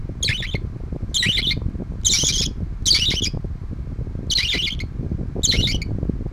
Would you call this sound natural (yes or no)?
yes